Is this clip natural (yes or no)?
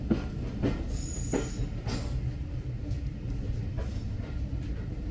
yes